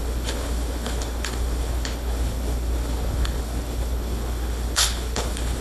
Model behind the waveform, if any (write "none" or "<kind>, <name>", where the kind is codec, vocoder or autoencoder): codec, HILCodec